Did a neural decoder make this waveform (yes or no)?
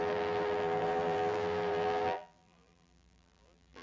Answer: yes